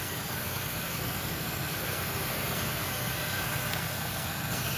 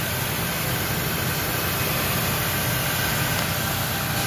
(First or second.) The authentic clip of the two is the second